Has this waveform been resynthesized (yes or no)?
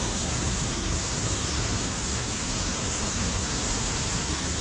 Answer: yes